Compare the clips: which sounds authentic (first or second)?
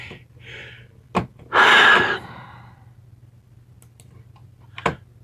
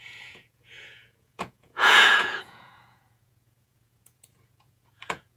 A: first